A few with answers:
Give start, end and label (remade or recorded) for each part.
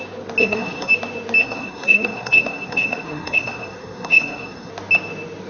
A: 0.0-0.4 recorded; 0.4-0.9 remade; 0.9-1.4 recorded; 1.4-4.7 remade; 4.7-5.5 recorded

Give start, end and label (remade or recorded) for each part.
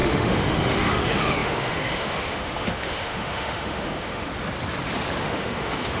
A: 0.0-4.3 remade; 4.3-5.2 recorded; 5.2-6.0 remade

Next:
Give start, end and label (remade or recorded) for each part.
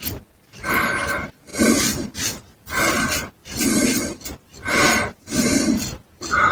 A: 0.0-1.5 recorded; 1.5-2.1 remade; 2.1-3.4 recorded; 3.4-4.9 remade; 4.9-6.5 recorded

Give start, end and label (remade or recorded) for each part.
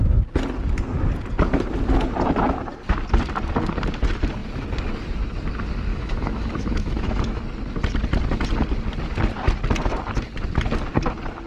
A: 0.0-5.9 recorded; 5.9-7.4 remade; 7.4-11.5 recorded